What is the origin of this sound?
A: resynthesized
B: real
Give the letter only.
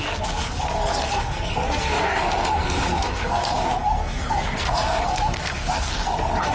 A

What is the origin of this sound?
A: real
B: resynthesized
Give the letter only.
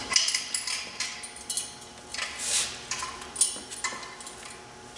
A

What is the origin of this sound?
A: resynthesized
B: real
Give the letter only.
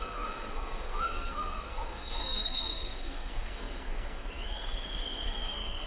A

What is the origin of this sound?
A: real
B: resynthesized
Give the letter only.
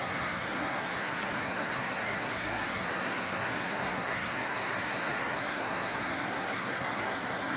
B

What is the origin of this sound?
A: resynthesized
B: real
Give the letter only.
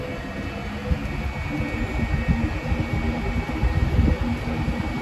B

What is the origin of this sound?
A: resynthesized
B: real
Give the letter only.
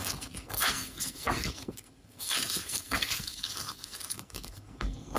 A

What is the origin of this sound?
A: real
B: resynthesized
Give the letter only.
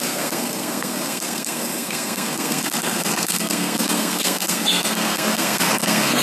B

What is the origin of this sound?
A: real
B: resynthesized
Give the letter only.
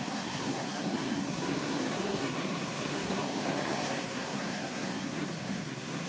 B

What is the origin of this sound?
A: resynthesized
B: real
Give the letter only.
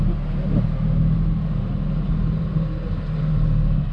B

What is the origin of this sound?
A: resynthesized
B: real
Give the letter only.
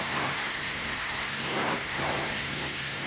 A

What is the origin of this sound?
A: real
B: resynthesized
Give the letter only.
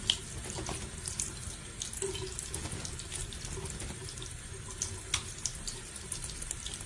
A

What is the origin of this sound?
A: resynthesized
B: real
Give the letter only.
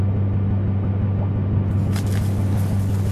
B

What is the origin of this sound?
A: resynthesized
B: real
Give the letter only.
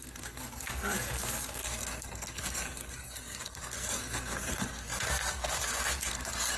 A